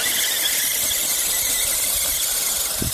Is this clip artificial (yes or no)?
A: no